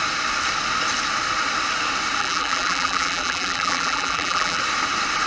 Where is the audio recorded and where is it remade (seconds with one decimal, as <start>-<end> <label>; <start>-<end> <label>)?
0.0-2.2 recorded; 2.2-4.6 remade; 4.6-5.3 recorded